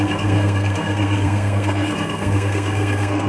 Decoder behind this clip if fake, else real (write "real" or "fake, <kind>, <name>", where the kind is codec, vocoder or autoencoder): fake, codec, SNAC